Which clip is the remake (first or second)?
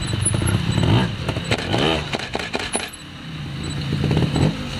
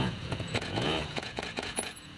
second